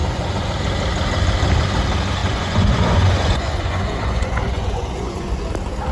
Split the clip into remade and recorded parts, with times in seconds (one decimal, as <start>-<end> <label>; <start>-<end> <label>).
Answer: 0.0-0.5 remade; 0.5-2.2 recorded; 2.2-5.4 remade; 5.4-5.9 recorded